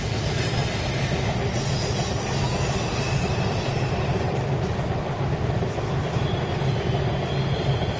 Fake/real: real